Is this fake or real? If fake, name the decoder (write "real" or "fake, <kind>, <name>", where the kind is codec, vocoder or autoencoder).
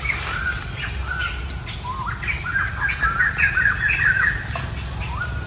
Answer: real